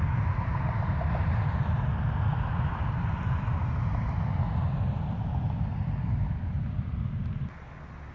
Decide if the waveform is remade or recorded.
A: recorded